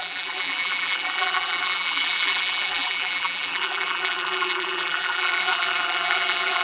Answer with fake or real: fake